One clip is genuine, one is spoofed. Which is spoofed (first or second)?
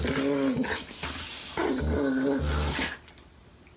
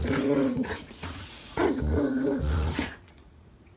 second